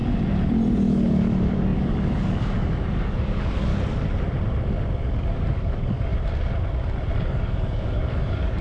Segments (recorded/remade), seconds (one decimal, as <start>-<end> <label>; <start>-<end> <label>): 0.0-0.9 recorded; 0.9-3.7 remade; 3.7-5.0 recorded; 5.0-6.1 remade; 6.1-7.1 recorded; 7.1-8.6 remade